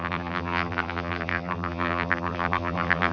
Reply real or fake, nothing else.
fake